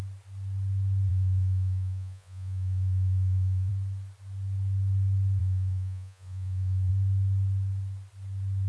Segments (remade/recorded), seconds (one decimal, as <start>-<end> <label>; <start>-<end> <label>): 0.0-1.1 recorded; 1.1-3.7 remade; 3.7-5.4 recorded; 5.4-6.9 remade; 6.9-8.7 recorded